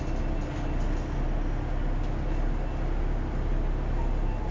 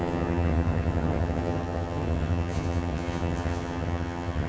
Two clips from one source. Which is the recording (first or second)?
first